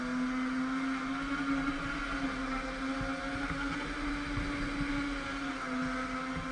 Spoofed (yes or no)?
no